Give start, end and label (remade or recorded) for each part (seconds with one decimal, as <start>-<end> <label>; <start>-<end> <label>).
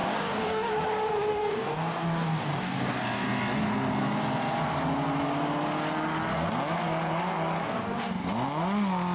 0.0-0.7 remade; 0.7-1.3 recorded; 1.3-2.9 remade; 2.9-7.6 recorded; 7.6-8.1 remade; 8.1-9.1 recorded